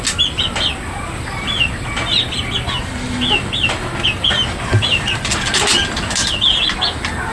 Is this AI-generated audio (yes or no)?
no